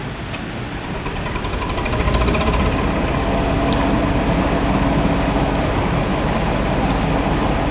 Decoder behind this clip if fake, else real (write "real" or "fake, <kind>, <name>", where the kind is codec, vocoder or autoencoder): real